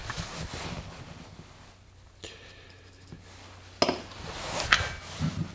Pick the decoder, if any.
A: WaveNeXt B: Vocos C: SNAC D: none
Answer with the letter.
D